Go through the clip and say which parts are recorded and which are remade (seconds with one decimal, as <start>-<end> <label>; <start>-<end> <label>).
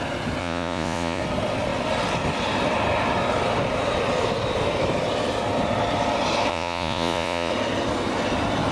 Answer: 0.0-0.4 recorded; 0.4-1.2 remade; 1.2-6.5 recorded; 6.5-7.5 remade; 7.5-8.7 recorded